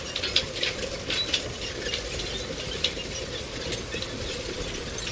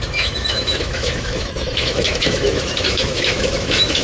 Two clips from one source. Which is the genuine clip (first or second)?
first